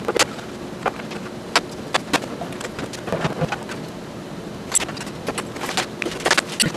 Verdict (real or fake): real